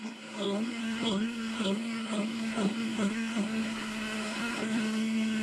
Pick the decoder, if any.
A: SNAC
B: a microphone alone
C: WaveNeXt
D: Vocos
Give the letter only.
A